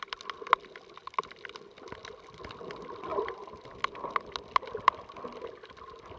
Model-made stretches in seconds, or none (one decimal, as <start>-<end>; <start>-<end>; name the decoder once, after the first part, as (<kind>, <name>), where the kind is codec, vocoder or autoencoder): none